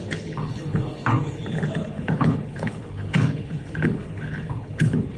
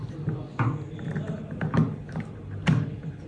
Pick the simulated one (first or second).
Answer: first